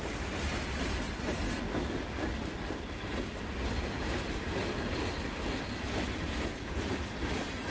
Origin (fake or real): real